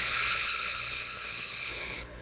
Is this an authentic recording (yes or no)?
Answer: no